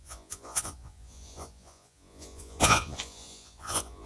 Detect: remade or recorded remade